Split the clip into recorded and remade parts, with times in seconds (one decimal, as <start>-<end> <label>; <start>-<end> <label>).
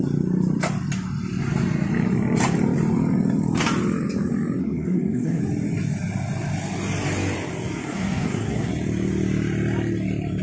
0.0-4.6 recorded; 4.6-5.4 remade; 5.4-7.8 recorded; 7.8-8.7 remade; 8.7-10.4 recorded